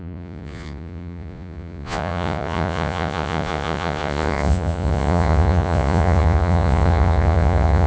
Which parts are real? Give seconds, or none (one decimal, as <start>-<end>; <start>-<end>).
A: none